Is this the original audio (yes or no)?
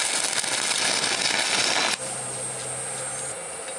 yes